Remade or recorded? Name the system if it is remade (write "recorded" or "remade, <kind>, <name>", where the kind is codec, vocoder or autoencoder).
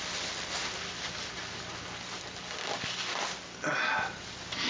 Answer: recorded